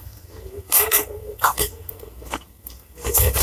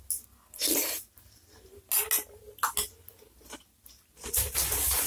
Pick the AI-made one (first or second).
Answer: first